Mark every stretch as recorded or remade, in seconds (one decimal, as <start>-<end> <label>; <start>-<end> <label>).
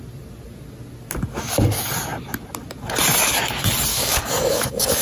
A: 0.0-3.9 recorded; 3.9-5.0 remade